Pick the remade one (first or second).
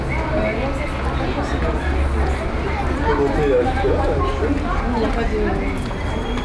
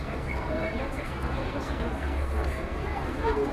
second